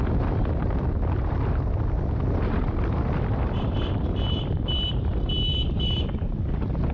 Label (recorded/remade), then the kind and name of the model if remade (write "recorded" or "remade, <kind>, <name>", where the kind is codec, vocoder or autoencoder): remade, vocoder, BigVGAN v2